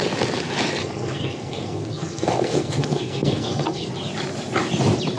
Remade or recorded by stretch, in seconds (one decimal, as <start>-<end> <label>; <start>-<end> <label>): 0.0-0.8 recorded; 0.8-3.9 remade; 3.9-5.2 recorded